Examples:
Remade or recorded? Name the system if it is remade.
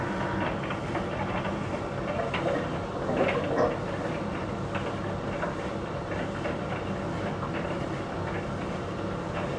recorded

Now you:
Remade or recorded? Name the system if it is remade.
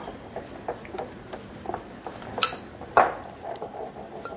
recorded